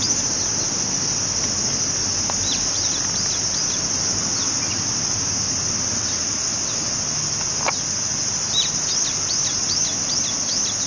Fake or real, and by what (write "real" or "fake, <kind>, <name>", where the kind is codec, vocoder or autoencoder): real